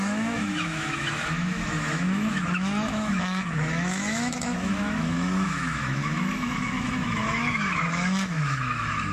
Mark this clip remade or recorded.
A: remade